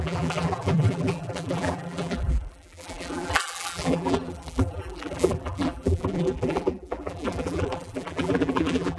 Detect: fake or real fake